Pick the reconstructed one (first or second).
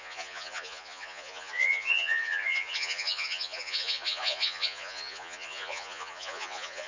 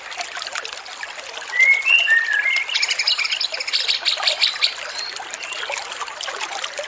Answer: first